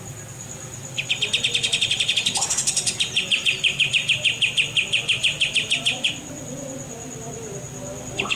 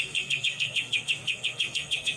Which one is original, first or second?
first